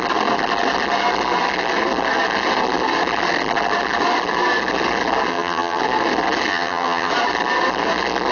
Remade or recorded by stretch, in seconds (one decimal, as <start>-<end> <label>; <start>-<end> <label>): 0.0-5.3 recorded; 5.3-5.8 remade; 5.8-6.5 recorded; 6.5-7.1 remade; 7.1-8.3 recorded

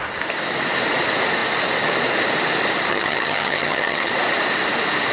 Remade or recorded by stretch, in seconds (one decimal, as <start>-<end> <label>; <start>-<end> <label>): 0.0-2.9 recorded; 2.9-4.1 remade; 4.1-5.1 recorded

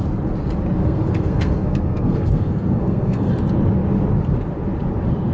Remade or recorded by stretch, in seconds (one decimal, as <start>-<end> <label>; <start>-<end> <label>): 0.0-0.8 recorded; 0.8-3.3 remade; 3.3-5.3 recorded